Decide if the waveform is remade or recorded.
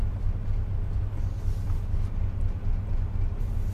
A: recorded